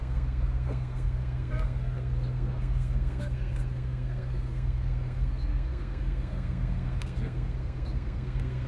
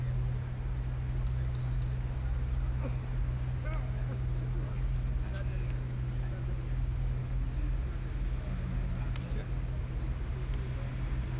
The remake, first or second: first